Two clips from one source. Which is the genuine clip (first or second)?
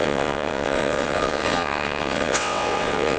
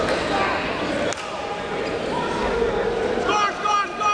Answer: second